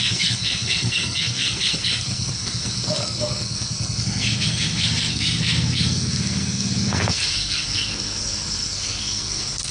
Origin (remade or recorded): remade